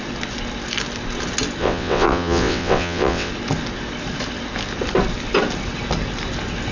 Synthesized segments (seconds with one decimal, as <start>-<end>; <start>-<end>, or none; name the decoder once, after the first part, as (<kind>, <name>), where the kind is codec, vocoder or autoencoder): 1.6-3.3 (vocoder, WaveNeXt)